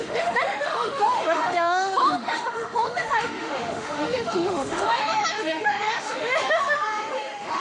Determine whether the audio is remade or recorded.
remade